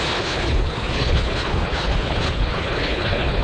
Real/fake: fake